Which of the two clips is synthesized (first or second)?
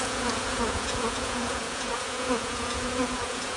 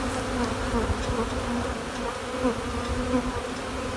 first